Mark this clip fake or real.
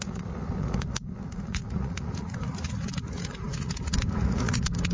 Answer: fake